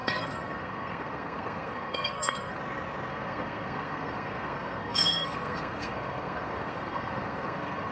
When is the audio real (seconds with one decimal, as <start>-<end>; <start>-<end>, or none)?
2.6-3.1